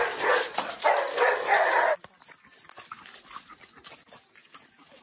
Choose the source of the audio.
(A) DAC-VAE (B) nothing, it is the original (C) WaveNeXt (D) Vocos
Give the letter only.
B